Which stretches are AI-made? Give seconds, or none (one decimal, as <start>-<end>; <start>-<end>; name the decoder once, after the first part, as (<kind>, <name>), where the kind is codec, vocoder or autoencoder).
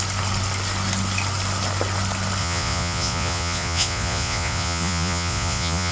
2.4-5.9 (vocoder, Vocos)